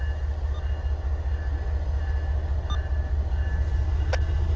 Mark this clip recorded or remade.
recorded